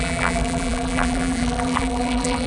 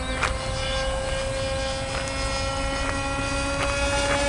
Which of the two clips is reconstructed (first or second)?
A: first